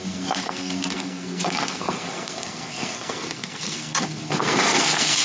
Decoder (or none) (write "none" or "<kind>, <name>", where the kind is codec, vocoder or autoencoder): codec, SNAC